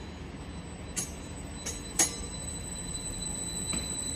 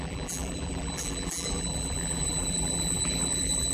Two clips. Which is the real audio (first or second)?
first